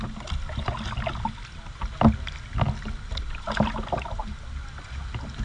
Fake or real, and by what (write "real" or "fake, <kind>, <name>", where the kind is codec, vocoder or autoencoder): real